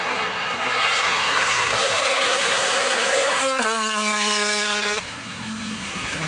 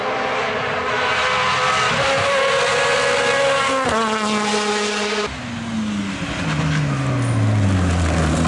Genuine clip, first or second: second